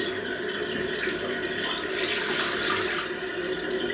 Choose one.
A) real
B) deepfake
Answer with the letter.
A